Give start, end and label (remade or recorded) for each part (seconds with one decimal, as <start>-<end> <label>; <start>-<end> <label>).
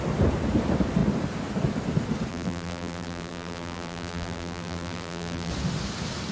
0.0-2.3 recorded; 2.3-5.5 remade; 5.5-6.3 recorded